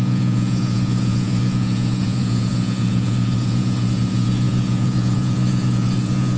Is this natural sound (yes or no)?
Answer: no